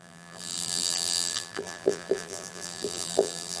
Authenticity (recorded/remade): remade